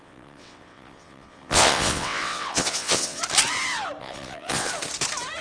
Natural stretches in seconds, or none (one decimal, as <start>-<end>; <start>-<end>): 3.2-4.0; 4.7-5.4